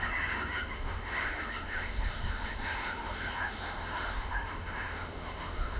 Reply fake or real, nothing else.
fake